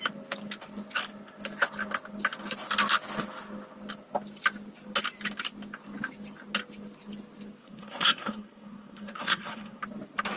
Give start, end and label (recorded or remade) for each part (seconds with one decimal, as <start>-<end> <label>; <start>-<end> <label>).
0.0-7.6 recorded; 7.6-9.8 remade; 9.8-10.4 recorded